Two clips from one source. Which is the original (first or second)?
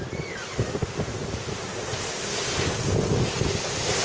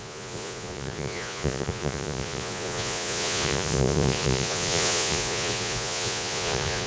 first